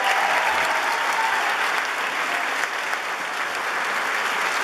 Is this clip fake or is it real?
real